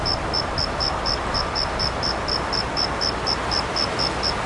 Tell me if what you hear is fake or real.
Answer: real